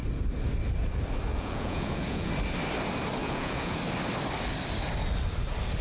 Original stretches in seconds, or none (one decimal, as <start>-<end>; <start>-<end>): 0.0-1.3; 2.3-3.2; 3.8-5.8